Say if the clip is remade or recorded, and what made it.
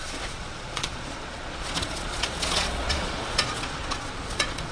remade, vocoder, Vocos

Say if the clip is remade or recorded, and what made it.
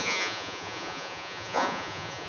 remade, vocoder, Vocos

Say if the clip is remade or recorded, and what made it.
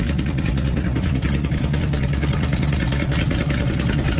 remade, vocoder, Vocos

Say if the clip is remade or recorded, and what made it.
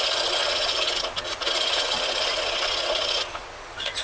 remade, vocoder, Vocos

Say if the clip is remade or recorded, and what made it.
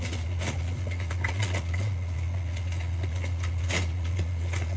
remade, vocoder, Vocos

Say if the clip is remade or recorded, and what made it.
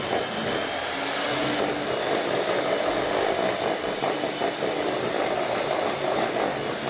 recorded